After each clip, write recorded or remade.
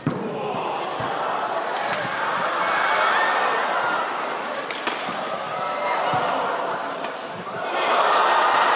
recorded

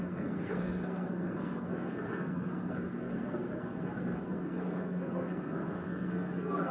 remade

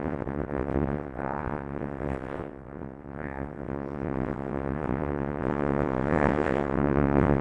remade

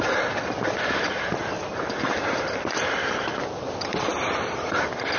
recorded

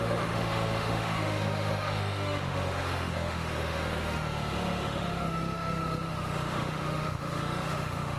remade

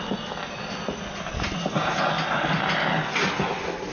recorded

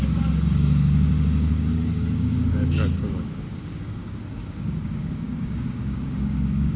remade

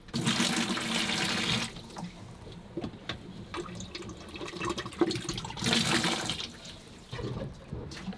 recorded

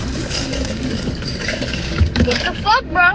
remade